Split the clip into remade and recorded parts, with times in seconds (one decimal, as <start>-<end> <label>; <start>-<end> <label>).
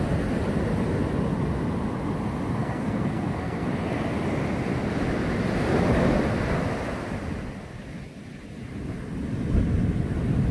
0.0-2.6 recorded; 2.6-3.7 remade; 3.7-10.5 recorded